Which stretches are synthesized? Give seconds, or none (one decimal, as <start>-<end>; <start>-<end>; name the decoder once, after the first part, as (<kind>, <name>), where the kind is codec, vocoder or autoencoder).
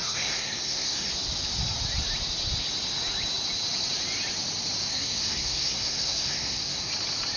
0.0-1.1 (codec, SNAC); 4.9-6.9